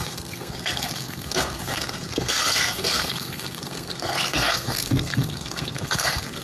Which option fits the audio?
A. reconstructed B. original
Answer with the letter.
A